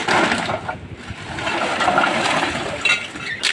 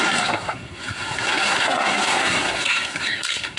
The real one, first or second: first